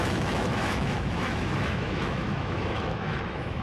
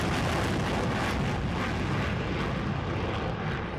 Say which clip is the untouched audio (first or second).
second